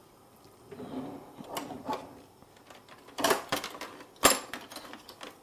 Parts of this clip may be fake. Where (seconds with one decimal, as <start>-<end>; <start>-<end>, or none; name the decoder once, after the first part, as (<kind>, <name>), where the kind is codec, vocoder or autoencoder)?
none